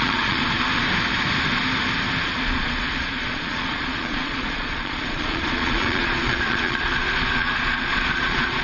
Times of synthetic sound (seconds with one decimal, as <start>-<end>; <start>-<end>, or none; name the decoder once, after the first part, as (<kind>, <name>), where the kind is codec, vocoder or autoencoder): 0.0-0.4 (vocoder, Vocos); 2.2-8.6